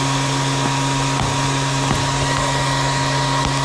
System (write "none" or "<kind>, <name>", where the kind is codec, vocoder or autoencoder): none